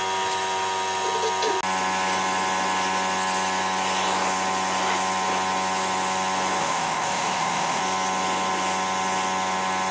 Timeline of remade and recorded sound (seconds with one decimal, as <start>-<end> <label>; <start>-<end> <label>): 0.0-6.6 recorded; 6.6-7.8 remade; 7.8-9.9 recorded